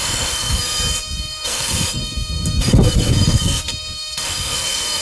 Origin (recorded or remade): remade